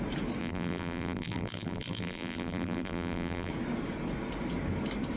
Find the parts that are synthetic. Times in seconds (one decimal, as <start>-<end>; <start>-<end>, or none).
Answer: 0.4-3.5